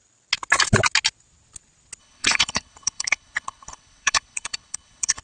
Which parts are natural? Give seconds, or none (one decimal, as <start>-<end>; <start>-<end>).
0.0-2.0